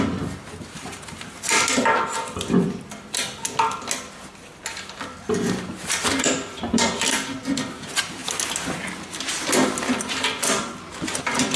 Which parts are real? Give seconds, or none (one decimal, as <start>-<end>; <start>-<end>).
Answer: 3.2-4.8; 8.2-11.2